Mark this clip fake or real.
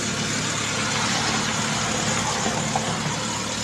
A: real